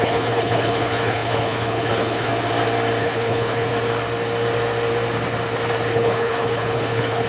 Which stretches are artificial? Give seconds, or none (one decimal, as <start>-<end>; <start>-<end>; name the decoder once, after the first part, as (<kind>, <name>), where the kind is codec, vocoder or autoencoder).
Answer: 0.0-2.3 (codec, HILCodec); 3.0-3.7; 5.9-7.3